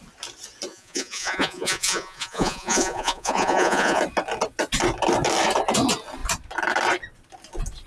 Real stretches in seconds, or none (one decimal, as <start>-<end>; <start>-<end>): 0.0-0.7; 4.0-7.9